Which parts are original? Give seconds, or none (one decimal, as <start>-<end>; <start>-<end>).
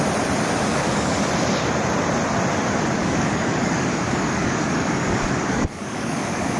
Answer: 0.0-0.7; 1.2-3.0